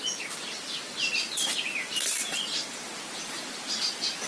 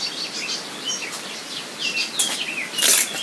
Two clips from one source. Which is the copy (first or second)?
first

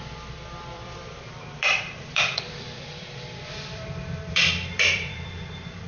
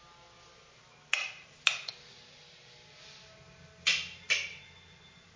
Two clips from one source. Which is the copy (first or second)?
first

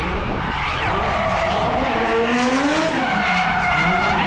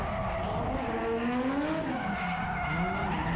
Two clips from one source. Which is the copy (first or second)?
first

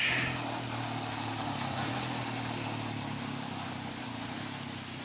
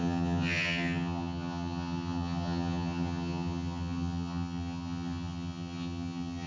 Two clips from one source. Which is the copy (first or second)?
second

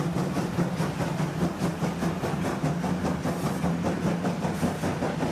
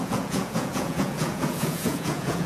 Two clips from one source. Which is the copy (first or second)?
second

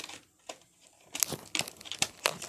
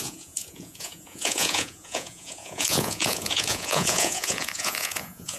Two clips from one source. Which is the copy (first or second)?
second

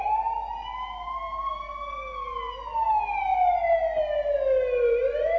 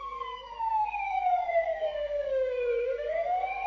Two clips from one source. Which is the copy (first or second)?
second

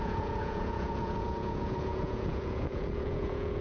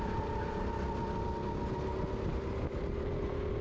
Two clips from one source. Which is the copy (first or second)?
first